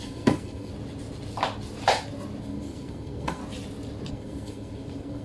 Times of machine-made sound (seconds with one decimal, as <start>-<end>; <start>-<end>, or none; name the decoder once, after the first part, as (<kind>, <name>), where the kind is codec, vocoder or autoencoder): 0.0-0.7 (codec, SNAC); 2.4-3.4; 4.1-5.2